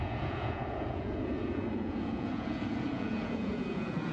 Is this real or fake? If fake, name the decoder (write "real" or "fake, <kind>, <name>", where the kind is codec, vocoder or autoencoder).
fake, vocoder, Vocos